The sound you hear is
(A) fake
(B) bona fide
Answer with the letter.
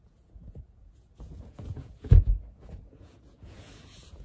A